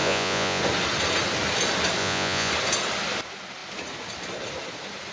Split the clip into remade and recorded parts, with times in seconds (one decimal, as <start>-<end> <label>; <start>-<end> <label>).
0.0-0.6 remade; 0.6-2.0 recorded; 2.0-2.5 remade; 2.5-5.1 recorded